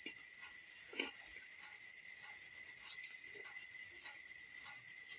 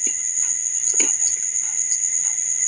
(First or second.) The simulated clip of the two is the second